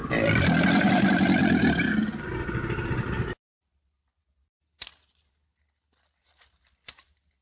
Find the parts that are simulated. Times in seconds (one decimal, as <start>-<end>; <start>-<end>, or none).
0.0-1.9; 2.3-4.2